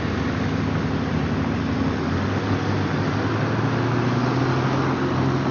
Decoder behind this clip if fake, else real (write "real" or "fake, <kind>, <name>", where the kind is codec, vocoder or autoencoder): real